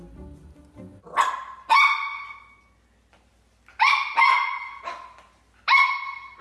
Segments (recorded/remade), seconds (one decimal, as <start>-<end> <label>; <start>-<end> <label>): 0.0-6.4 recorded

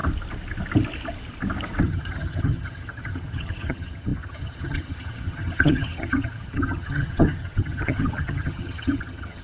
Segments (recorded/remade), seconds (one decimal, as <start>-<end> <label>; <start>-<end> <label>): 0.0-1.8 recorded; 1.8-9.4 remade

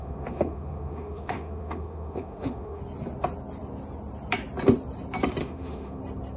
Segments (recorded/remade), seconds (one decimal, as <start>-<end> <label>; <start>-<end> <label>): 0.0-2.8 remade; 2.8-5.4 recorded; 5.4-6.0 remade; 6.0-6.4 recorded

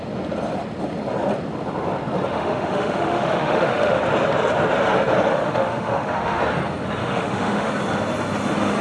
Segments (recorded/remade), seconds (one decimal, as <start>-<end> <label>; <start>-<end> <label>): 0.0-2.3 recorded; 2.3-4.0 remade; 4.0-5.3 recorded; 5.3-6.4 remade; 6.4-7.0 recorded; 7.0-7.7 remade; 7.7-8.8 recorded

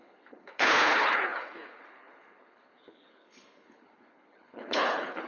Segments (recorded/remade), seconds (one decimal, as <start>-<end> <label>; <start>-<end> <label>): 0.0-5.3 remade